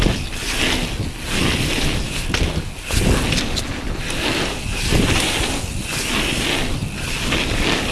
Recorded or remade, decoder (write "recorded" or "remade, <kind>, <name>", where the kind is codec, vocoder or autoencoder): recorded